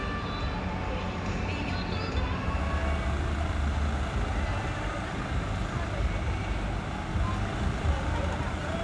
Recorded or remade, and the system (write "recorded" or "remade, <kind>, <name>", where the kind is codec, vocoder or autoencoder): recorded